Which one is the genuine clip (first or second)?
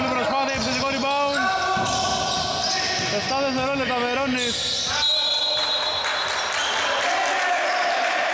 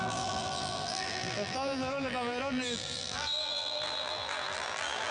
first